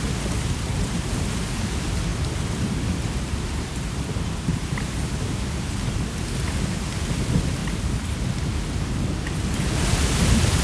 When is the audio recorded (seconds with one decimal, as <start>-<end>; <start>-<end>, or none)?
0.0-10.6